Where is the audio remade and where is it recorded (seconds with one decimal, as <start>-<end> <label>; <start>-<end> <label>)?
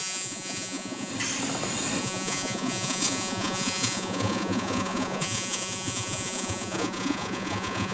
0.0-1.1 remade; 1.1-2.0 recorded; 2.0-7.9 remade